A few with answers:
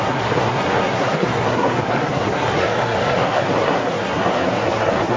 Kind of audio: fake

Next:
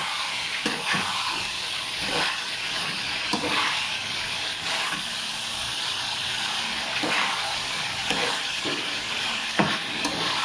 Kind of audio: fake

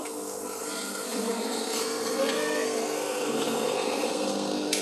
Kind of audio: fake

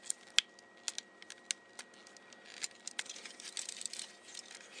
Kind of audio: real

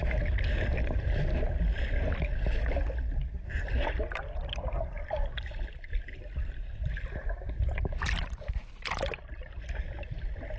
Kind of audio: real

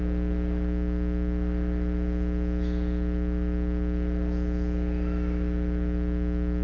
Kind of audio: real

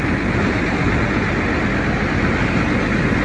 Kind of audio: real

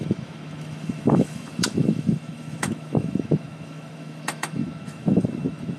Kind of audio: fake